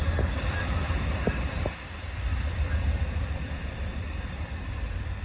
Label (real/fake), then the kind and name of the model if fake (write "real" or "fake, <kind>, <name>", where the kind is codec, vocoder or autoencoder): fake, vocoder, BigVGAN v2